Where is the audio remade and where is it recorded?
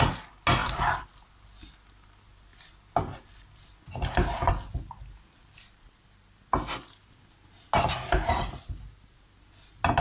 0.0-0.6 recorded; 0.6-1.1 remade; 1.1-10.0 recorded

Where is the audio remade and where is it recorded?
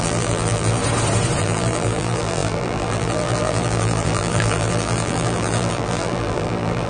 0.0-0.8 remade; 0.8-1.4 recorded; 1.4-6.9 remade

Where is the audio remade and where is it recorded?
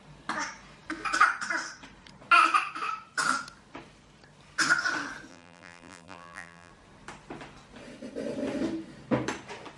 0.0-5.3 recorded; 5.3-6.7 remade; 6.7-9.8 recorded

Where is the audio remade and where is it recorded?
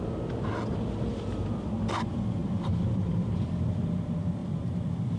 0.0-2.4 recorded; 2.4-3.5 remade; 3.5-4.4 recorded; 4.4-5.2 remade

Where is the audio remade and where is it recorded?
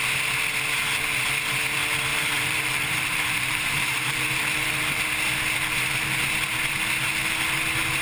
0.0-2.1 recorded; 2.1-4.8 remade; 4.8-8.0 recorded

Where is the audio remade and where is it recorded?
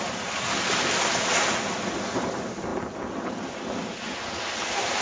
0.0-2.7 recorded; 2.7-3.3 remade; 3.3-5.0 recorded